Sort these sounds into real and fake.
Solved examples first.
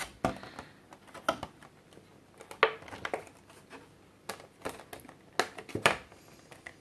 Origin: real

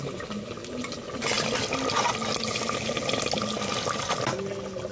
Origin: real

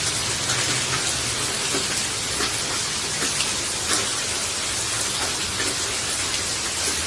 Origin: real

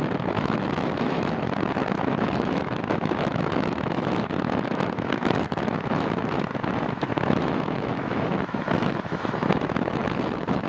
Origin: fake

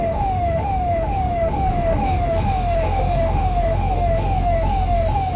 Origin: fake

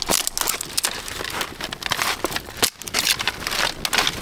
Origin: real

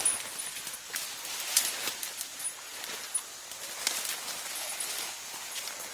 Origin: real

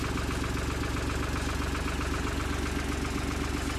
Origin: real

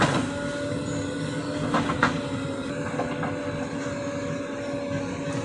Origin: real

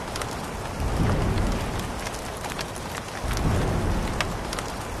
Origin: real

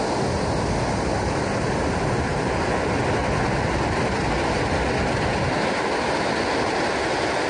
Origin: real